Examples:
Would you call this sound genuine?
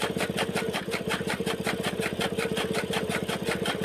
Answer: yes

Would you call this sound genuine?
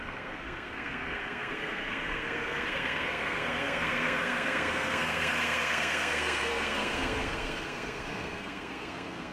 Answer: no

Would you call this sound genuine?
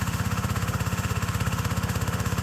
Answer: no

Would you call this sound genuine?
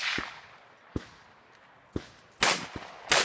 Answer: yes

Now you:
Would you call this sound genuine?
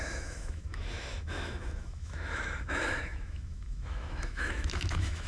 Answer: no